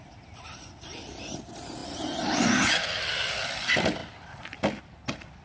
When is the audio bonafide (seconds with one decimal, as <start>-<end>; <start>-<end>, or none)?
0.0-5.4